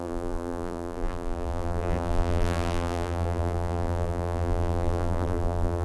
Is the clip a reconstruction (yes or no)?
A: yes